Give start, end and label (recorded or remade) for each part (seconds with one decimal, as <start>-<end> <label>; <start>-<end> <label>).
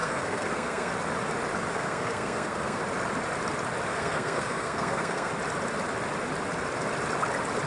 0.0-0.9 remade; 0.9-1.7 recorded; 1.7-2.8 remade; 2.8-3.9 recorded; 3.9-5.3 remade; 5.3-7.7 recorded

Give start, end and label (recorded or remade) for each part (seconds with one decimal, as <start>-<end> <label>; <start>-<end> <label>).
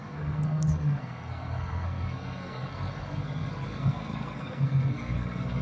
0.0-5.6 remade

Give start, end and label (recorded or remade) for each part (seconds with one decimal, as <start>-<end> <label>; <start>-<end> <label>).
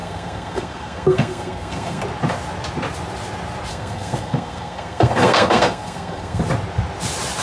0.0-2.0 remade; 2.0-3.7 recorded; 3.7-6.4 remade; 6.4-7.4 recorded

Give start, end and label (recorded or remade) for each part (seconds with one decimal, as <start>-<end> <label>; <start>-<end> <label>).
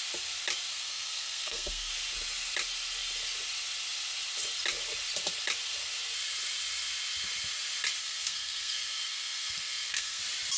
0.0-0.7 recorded; 0.7-1.9 remade; 1.9-8.0 recorded; 8.0-10.2 remade; 10.2-10.6 recorded